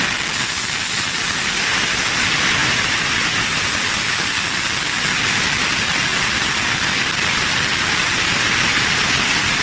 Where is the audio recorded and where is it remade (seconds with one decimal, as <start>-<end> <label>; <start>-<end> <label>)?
0.0-2.6 recorded; 2.6-3.7 remade; 3.7-9.6 recorded